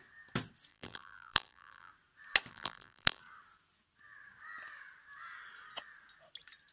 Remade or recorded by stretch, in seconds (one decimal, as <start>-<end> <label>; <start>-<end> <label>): 0.0-0.7 recorded; 0.7-1.9 remade; 1.9-2.5 recorded; 2.5-3.2 remade; 3.2-6.7 recorded